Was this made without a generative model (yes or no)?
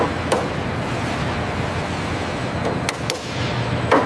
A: yes